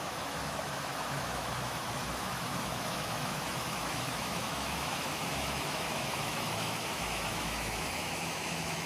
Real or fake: fake